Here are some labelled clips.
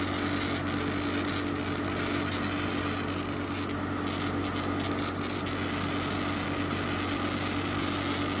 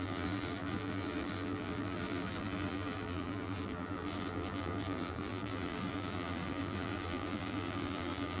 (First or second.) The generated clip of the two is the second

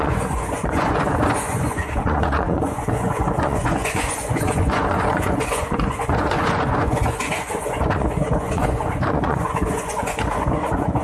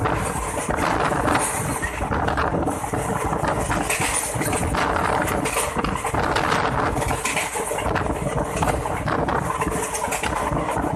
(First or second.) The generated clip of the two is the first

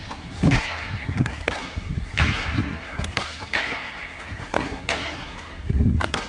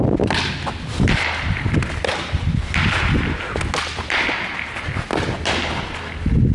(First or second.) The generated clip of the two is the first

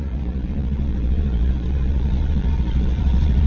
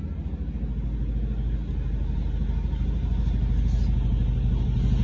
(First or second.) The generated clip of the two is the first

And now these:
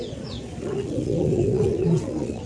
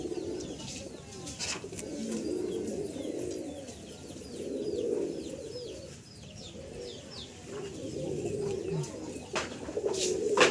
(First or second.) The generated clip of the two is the first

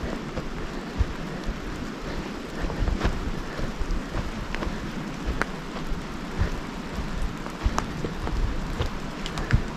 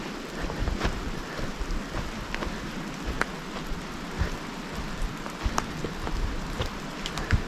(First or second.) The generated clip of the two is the first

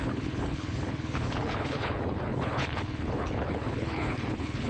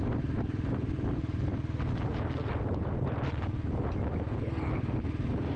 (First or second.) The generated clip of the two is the first